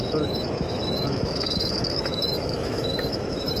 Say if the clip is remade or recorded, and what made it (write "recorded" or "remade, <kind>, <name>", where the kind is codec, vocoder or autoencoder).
remade, autoencoder, DAC-VAE